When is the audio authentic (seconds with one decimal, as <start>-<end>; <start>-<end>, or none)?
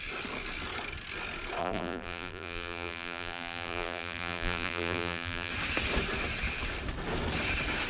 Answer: 0.0-1.6; 5.5-7.9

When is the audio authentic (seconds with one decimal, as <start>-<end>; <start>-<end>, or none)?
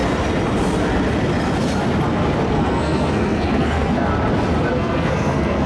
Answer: 0.0-2.5; 4.1-4.7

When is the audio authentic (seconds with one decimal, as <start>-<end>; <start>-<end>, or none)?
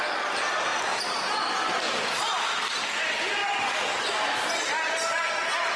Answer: 0.0-5.8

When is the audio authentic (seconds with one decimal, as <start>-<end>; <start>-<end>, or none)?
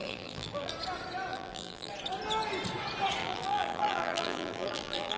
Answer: 0.7-1.3; 1.9-3.2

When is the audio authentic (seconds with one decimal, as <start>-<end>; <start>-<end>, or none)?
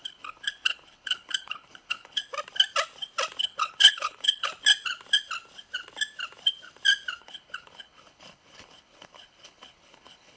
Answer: 2.2-3.4; 4.5-7.2